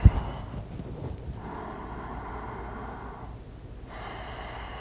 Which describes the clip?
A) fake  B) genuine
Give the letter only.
B